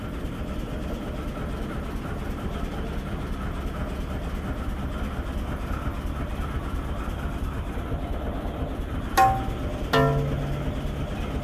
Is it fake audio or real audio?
real